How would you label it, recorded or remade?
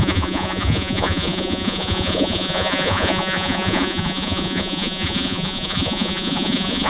remade